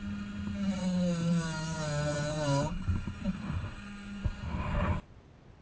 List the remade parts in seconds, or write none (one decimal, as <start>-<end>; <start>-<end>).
0.8-4.2